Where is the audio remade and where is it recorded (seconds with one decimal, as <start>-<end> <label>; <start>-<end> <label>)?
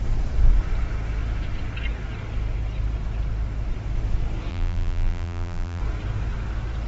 0.0-4.5 recorded; 4.5-5.8 remade; 5.8-6.9 recorded